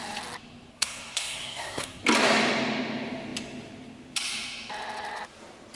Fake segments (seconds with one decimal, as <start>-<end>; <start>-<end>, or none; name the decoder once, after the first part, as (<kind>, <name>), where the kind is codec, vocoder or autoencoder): 0.7-2.0 (codec, SNAC)